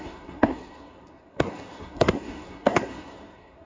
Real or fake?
fake